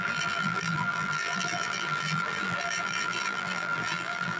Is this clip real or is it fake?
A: fake